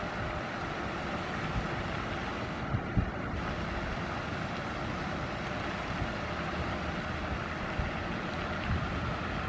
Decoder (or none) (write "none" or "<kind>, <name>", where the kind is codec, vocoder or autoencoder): none